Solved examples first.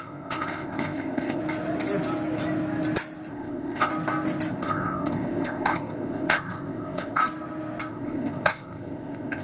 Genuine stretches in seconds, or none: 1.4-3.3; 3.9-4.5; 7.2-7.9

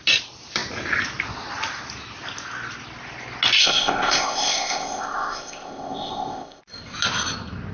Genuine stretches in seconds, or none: 0.0-3.6; 6.6-7.7

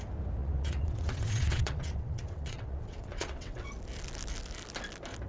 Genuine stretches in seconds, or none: 0.0-0.4; 3.6-5.3